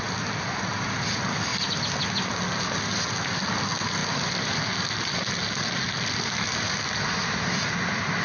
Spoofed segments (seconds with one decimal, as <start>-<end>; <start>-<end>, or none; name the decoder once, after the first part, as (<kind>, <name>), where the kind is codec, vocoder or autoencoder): none